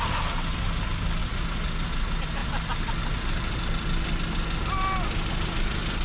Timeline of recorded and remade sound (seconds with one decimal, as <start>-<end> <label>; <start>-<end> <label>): 0.0-6.0 recorded